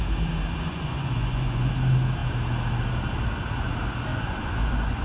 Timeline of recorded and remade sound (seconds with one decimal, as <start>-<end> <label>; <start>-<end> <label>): 0.0-0.7 recorded; 0.7-1.7 remade; 1.7-4.1 recorded; 4.1-5.0 remade